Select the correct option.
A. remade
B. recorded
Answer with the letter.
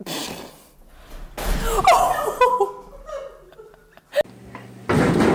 B